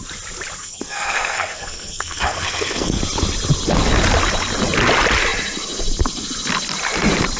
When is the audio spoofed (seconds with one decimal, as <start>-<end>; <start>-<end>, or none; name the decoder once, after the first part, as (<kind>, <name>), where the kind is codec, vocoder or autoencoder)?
0.6-3.0 (codec, SNAC)